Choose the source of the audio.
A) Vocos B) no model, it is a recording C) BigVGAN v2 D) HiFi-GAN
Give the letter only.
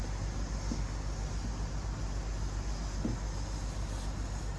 B